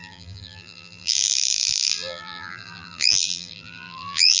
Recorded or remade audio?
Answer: remade